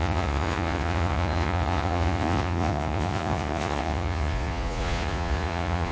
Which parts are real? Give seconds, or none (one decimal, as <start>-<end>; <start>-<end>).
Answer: none